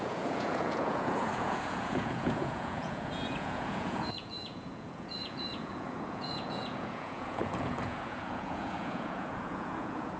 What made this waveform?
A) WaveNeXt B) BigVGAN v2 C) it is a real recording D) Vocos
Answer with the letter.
D